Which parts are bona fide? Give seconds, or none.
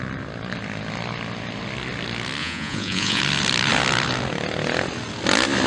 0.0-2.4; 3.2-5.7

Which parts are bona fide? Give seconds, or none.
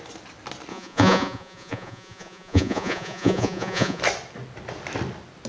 0.0-0.7; 4.0-5.5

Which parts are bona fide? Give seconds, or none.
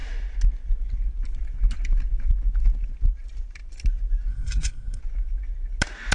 0.0-4.3; 5.0-6.1